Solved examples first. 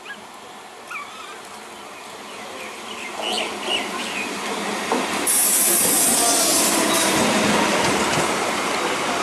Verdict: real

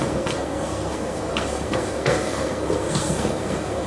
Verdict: fake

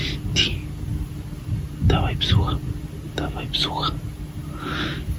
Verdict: real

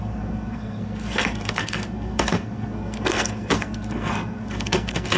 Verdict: fake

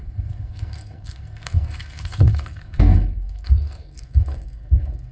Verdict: fake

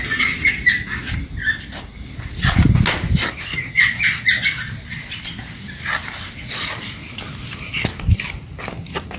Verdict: real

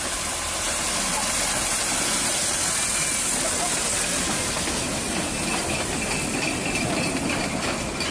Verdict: real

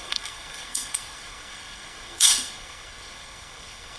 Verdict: fake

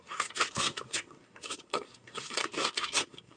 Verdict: fake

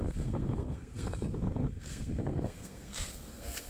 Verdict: fake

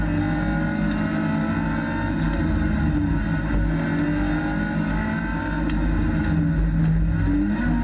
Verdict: real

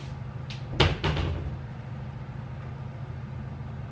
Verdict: real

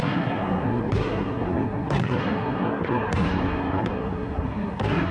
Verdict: fake